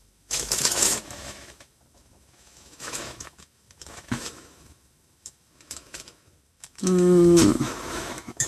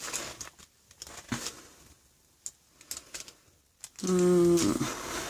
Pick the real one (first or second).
second